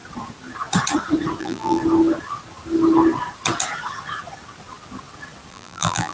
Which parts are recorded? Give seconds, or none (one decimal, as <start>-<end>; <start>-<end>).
0.0-1.4; 1.8-5.5